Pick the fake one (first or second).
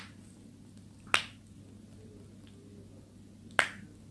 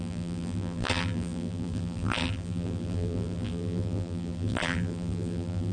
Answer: second